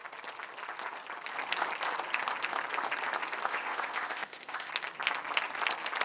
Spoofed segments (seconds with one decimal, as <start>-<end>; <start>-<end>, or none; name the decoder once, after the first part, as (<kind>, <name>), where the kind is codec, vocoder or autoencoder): 3.5-4.7 (codec, ZipCodec)